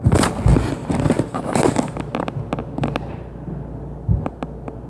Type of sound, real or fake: real